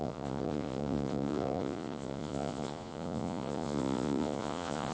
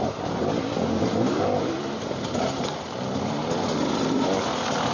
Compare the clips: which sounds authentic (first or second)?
second